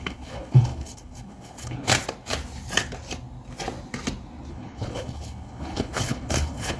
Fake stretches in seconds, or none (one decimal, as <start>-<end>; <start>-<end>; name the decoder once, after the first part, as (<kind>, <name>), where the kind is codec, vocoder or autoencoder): 0.0-1.9 (codec, HILCodec); 4.5-6.8